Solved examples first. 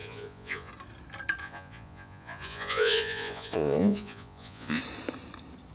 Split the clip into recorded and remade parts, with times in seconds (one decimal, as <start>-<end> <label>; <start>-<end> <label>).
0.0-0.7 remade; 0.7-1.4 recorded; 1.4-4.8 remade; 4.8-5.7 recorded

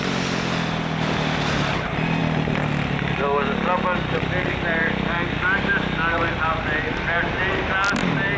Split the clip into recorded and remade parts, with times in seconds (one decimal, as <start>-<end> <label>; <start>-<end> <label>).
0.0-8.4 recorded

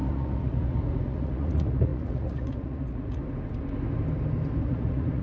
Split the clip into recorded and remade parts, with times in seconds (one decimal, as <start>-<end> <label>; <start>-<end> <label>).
0.0-3.2 remade; 3.2-4.6 recorded; 4.6-5.2 remade

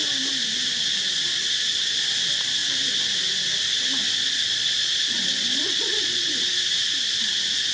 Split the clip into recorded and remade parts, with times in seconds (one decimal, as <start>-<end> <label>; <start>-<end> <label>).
0.0-4.2 recorded; 4.2-6.3 remade; 6.3-7.7 recorded